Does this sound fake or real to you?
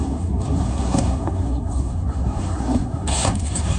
fake